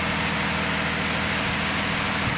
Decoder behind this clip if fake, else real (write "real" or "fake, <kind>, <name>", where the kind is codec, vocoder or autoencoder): real